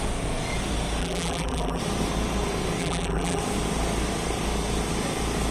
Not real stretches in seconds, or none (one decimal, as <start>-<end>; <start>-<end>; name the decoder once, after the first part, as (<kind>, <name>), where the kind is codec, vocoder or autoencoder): 1.0-1.8 (vocoder, BigVGAN v2); 2.8-3.4